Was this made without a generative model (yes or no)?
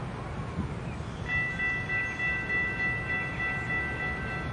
yes